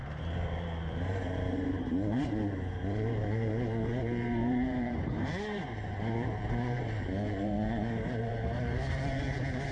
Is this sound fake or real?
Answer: fake